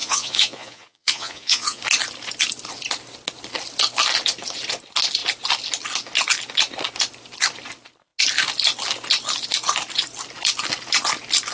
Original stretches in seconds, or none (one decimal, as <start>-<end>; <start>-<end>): 1.8-11.5